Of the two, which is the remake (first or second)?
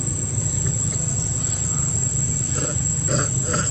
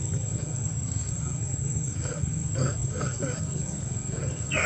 second